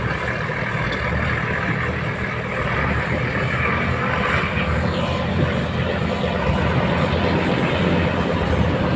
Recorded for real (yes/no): yes